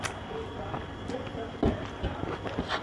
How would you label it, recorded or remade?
recorded